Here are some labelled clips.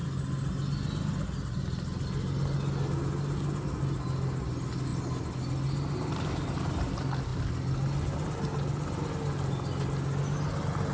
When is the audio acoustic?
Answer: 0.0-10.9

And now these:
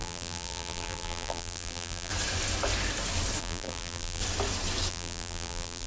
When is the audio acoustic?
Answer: 2.1-3.4; 4.2-4.9

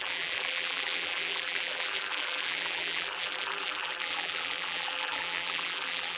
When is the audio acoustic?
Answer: none